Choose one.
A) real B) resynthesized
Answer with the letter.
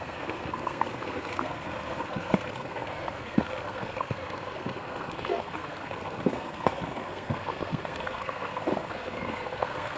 B